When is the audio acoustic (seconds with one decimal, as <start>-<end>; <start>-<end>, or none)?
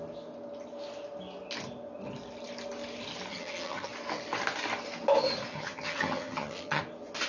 0.0-3.3; 3.9-5.5; 6.8-7.3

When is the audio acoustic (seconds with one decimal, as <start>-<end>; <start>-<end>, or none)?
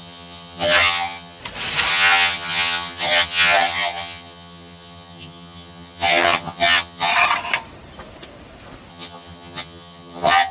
1.4-1.9; 7.1-8.9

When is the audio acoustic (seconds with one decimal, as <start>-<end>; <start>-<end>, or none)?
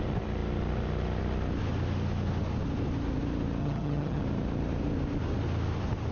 0.0-3.6; 4.2-6.1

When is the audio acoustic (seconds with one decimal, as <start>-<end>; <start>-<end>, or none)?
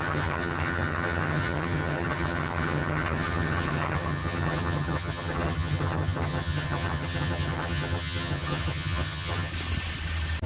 9.5-10.5